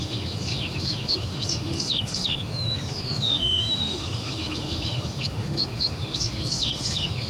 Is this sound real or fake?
fake